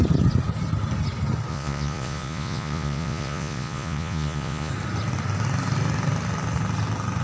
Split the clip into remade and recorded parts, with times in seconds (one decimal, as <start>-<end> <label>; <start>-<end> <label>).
0.0-1.5 recorded; 1.5-4.7 remade; 4.7-7.2 recorded